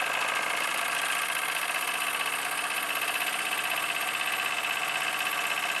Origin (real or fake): real